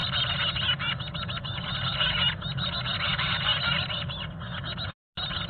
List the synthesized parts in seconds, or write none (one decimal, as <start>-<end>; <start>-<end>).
none